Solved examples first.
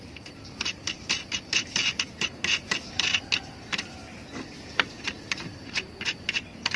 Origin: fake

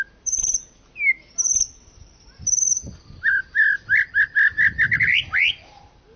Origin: fake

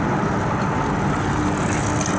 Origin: real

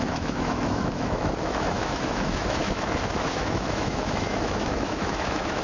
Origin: fake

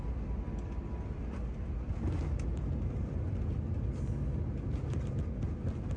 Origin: real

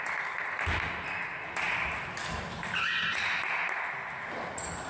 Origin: real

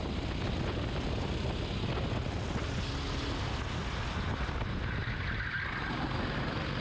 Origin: real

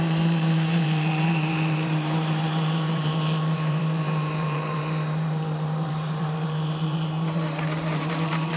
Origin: fake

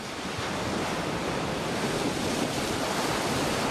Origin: real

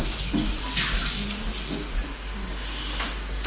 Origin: real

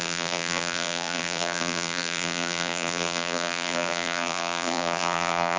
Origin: fake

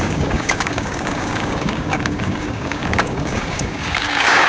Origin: fake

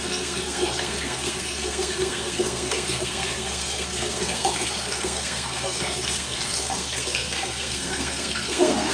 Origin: fake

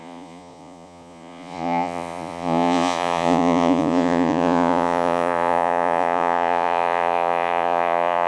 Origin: fake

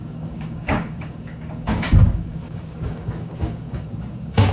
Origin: fake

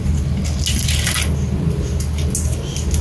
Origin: real